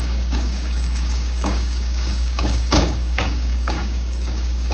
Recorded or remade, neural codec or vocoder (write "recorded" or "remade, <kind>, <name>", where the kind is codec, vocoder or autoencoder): remade, codec, DAC